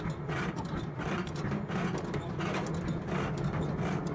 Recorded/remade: recorded